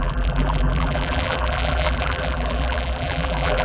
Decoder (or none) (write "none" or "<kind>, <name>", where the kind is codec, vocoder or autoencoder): vocoder, BigVGAN v2